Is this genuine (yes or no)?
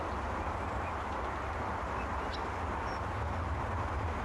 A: yes